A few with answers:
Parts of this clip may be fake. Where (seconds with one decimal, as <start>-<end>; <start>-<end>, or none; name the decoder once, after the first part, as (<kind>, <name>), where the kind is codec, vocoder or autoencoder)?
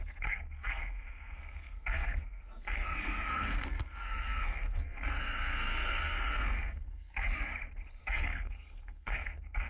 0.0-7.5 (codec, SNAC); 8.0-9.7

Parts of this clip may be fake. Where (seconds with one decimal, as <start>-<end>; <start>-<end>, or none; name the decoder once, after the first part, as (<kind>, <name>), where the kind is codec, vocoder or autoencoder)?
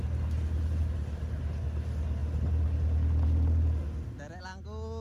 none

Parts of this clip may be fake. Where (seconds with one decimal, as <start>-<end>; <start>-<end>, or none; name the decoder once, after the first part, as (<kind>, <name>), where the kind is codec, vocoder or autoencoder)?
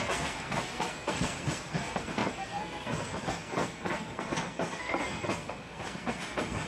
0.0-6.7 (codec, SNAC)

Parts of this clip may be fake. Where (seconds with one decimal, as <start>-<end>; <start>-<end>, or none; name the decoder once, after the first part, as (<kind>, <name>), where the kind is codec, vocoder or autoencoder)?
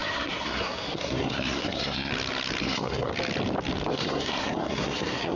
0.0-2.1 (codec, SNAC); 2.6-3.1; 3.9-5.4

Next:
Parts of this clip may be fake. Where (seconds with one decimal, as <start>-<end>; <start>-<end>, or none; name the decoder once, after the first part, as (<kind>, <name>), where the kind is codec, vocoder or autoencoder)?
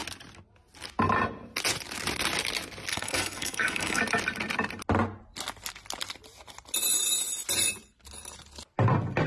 2.9-4.0 (codec, SNAC)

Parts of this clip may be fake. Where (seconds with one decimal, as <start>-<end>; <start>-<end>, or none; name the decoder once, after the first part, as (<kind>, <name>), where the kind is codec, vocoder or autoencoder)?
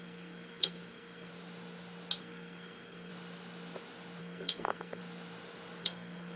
0.0-1.3 (codec, SNAC); 2.2-3.1; 4.2-5.0; 5.8-6.4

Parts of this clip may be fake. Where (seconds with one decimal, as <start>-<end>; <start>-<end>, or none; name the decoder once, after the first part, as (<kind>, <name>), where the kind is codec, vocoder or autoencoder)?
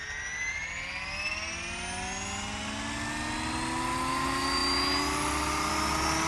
none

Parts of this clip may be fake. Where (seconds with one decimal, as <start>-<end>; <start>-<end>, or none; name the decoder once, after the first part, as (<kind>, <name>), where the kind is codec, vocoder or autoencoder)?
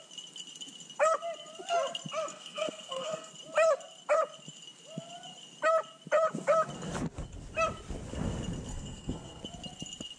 2.3-3.3 (codec, SNAC); 8.7-9.4